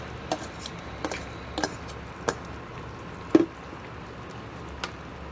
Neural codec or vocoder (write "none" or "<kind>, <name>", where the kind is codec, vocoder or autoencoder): none